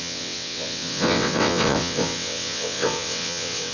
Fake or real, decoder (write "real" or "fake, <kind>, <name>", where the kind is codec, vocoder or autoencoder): fake, vocoder, WaveNeXt